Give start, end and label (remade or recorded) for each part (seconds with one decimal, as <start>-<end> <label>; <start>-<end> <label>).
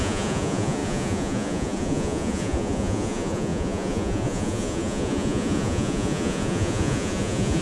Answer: 0.0-7.6 remade